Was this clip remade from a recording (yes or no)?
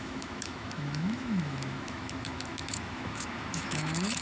yes